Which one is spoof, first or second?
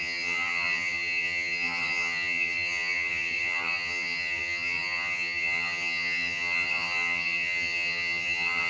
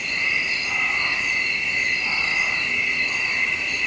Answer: first